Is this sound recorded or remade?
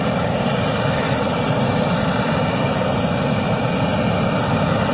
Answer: recorded